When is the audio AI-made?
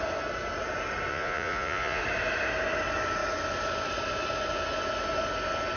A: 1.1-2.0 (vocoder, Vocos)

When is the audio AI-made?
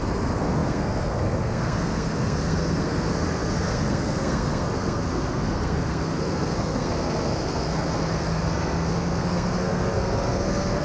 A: 0.0-10.8 (codec, SNAC)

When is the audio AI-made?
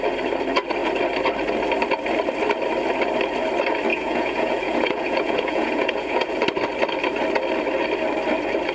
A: 3.9-6.3 (vocoder, Vocos)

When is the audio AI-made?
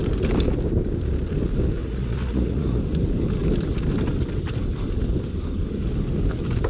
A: 1.8-2.8 (vocoder, Vocos)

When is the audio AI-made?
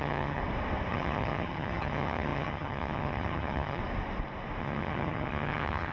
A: 0.0-0.4 (vocoder, HiFi-GAN); 0.9-3.8; 4.6-5.9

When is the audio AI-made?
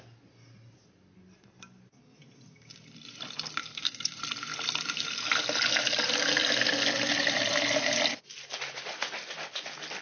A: 3.6-4.2 (codec, SNAC)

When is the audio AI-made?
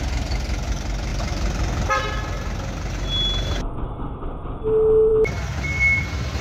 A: 1.1-2.2 (vocoder, BigVGAN v2)